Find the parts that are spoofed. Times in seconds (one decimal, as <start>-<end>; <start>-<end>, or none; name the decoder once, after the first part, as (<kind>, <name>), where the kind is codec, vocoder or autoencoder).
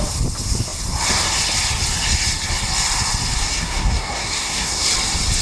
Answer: 3.4-4.9 (codec, SNAC)